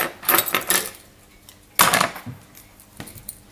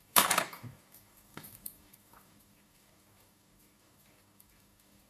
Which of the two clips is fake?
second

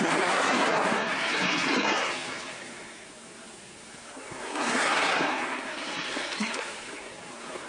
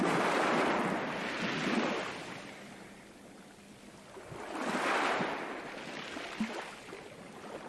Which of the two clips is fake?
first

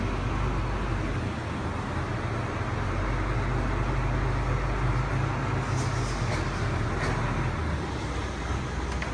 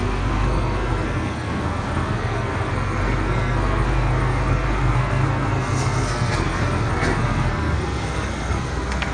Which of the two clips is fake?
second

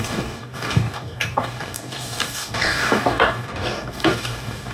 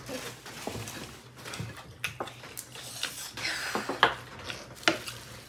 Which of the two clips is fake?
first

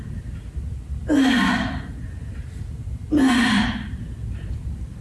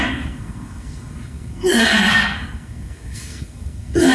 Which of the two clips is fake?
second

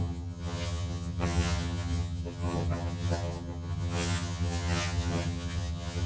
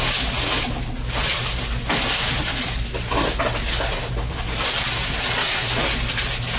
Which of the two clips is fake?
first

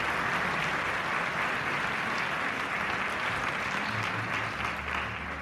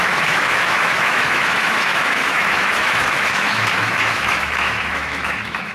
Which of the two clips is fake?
second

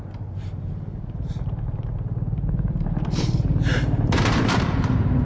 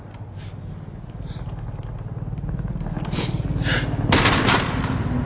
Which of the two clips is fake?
first